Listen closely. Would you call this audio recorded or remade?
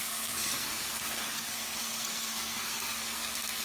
remade